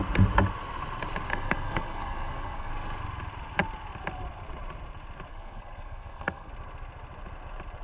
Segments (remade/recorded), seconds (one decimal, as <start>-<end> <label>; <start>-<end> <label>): 0.0-1.3 recorded; 1.3-2.7 remade; 2.7-5.3 recorded; 5.3-6.5 remade; 6.5-7.8 recorded